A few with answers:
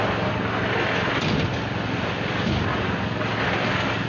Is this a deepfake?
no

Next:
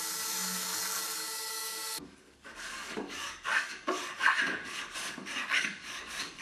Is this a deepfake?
yes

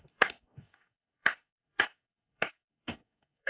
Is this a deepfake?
yes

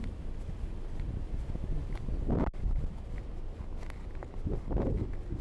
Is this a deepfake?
no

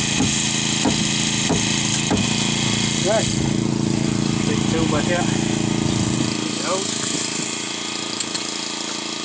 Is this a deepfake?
no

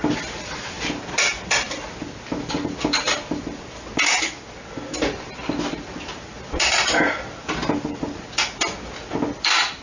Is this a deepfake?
no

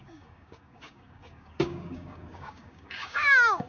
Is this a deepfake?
yes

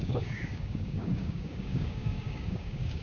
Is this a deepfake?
yes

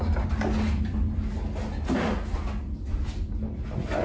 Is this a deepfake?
no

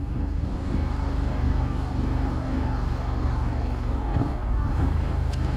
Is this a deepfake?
yes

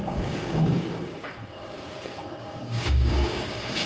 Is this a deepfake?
yes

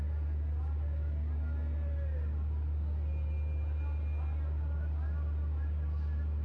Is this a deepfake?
no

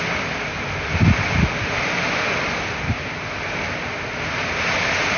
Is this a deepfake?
no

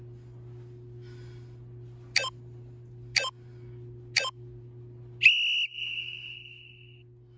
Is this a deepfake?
no